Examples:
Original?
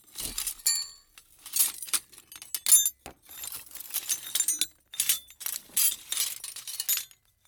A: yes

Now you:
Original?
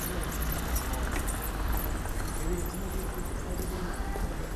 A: yes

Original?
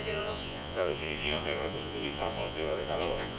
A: no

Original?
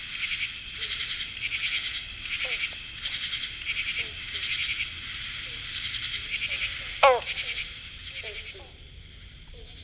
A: yes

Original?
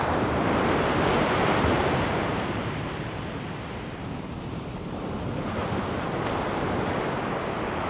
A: no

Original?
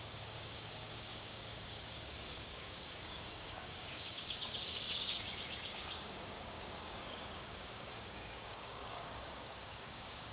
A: no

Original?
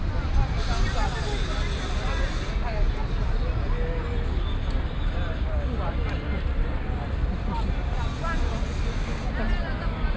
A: yes